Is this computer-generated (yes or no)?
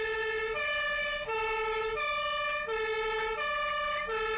no